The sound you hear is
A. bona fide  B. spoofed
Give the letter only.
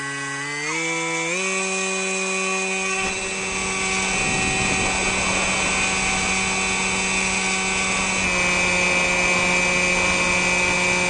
A